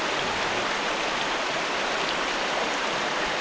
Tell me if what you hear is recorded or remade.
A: recorded